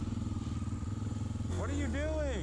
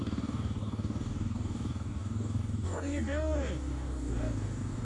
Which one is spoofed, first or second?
second